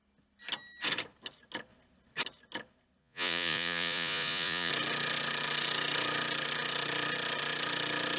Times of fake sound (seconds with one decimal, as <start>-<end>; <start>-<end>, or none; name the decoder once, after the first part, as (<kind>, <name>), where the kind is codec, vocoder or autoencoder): 3.0-4.7 (vocoder, Vocos)